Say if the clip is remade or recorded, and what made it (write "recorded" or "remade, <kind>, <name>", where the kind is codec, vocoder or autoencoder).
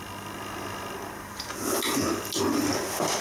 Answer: recorded